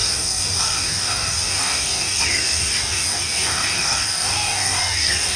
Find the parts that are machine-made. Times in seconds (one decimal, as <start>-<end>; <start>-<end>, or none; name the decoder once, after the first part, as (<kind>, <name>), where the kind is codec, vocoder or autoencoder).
0.0-5.4 (codec, DAC)